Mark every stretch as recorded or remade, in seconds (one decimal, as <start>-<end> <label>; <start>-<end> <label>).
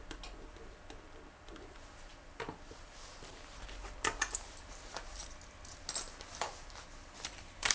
0.0-7.7 recorded